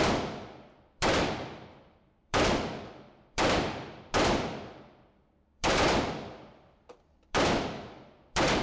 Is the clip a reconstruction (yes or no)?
yes